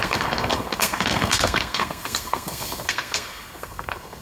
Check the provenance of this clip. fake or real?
fake